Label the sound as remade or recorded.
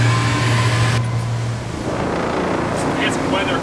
recorded